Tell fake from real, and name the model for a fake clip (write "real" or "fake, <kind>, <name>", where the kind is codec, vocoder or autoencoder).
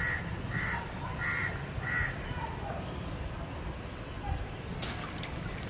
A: real